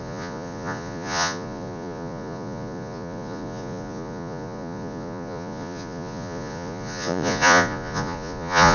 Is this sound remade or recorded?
remade